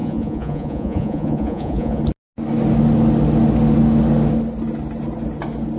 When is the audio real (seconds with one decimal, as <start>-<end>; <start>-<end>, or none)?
2.0-5.8